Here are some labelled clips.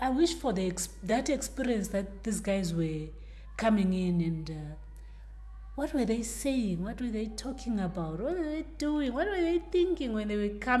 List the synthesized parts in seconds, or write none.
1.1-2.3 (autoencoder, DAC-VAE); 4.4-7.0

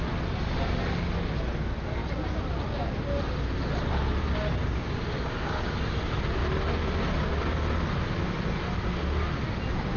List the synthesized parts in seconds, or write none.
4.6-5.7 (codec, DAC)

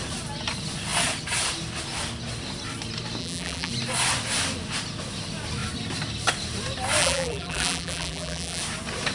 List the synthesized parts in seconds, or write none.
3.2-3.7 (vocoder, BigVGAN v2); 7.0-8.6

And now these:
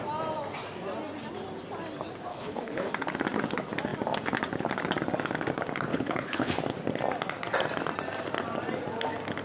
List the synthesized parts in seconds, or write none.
2.3-2.9 (codec, HILCodec); 5.9-6.6

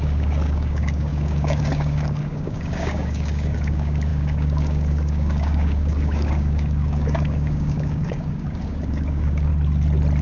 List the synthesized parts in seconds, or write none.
0.0-9.5 (codec, DAC)

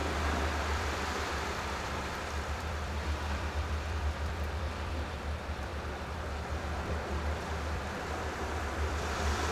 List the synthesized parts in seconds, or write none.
0.6-5.7 (vocoder, BigVGAN v2); 6.5-9.5